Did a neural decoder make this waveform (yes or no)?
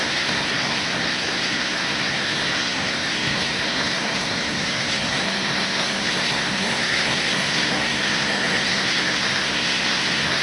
yes